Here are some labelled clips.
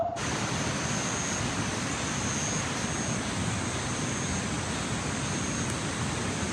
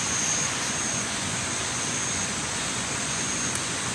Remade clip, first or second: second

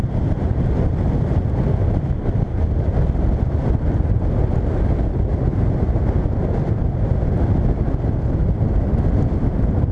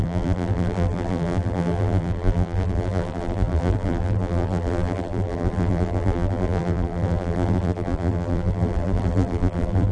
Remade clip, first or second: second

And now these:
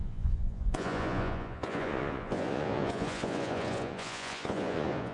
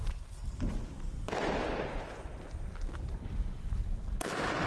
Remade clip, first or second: first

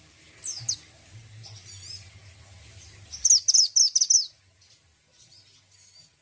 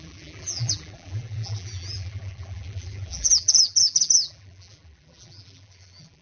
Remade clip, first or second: second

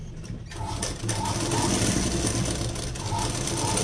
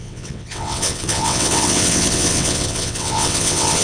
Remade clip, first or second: second